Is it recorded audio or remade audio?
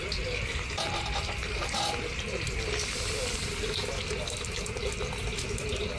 recorded